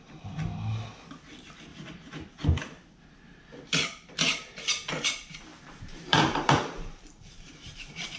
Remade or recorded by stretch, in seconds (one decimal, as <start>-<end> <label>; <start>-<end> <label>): 0.0-1.7 recorded; 1.7-2.4 remade; 2.4-5.5 recorded; 5.5-8.2 remade